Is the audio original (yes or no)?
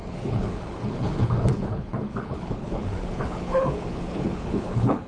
no